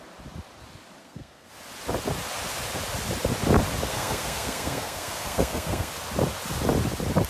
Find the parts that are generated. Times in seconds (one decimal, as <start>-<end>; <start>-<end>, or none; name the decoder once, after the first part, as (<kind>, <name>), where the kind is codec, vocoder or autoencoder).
1.0-1.5 (codec, SNAC); 3.9-5.9

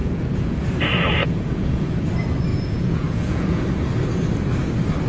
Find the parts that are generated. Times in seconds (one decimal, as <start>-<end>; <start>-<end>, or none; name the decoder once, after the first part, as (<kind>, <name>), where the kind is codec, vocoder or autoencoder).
0.0-0.6 (vocoder, Vocos); 1.2-2.0; 2.5-3.6